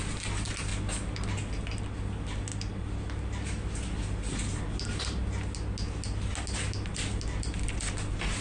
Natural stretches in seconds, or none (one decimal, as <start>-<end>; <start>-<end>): 0.0-8.4